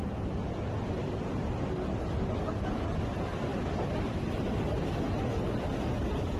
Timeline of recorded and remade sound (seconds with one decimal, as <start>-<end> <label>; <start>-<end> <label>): 0.0-6.4 recorded